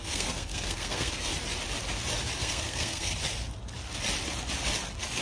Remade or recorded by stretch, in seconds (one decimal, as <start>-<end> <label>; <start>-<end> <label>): 0.0-1.3 remade; 1.3-2.4 recorded; 2.4-3.1 remade; 3.1-5.2 recorded